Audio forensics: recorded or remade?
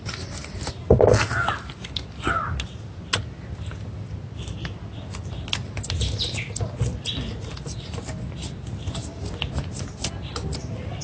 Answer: recorded